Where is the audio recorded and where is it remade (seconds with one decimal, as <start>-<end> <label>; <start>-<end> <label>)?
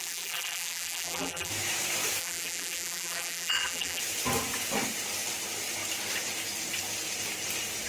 0.0-1.5 remade; 1.5-2.2 recorded; 2.2-4.0 remade; 4.0-7.9 recorded